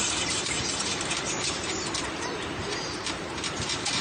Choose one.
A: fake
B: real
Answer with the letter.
A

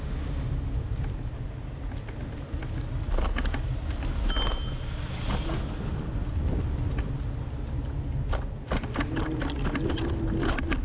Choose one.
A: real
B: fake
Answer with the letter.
A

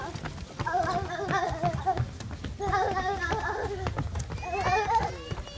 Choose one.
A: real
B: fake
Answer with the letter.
A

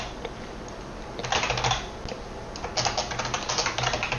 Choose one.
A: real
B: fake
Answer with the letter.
A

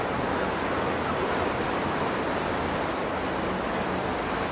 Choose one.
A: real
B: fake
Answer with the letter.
A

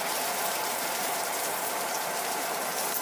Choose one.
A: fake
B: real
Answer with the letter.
A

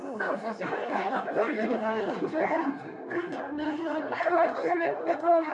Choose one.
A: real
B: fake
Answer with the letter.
B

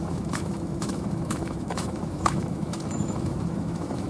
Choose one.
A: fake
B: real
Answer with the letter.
A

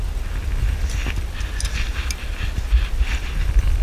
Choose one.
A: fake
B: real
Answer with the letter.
B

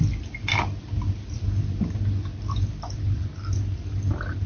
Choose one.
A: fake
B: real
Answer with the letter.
B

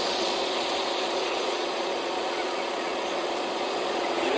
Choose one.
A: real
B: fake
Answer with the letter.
B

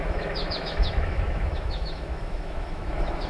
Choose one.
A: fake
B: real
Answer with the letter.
A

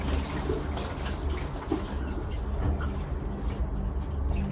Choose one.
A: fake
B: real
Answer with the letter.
B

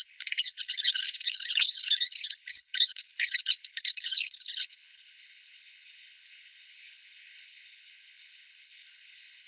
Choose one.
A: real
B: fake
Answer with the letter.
B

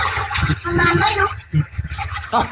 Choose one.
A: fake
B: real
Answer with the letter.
A